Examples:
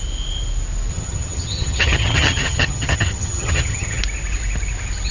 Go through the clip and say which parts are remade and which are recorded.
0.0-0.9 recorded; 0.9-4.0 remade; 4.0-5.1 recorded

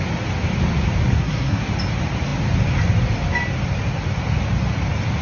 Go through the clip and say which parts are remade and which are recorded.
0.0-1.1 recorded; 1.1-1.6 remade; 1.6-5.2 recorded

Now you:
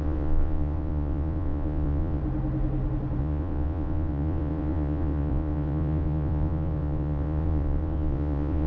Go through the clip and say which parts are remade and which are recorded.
0.0-2.2 remade; 2.2-3.2 recorded; 3.2-8.7 remade

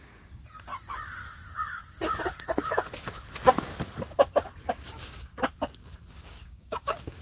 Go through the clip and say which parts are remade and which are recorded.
0.0-0.7 remade; 0.7-4.7 recorded; 4.7-5.3 remade; 5.3-6.1 recorded; 6.1-7.2 remade

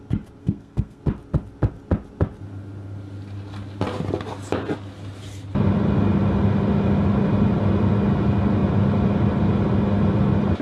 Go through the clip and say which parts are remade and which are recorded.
0.0-0.4 recorded; 0.4-1.0 remade; 1.0-10.6 recorded